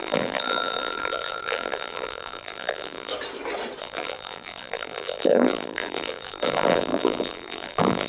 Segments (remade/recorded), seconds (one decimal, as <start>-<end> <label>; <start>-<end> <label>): 0.0-3.1 remade; 3.1-3.8 recorded; 3.8-8.1 remade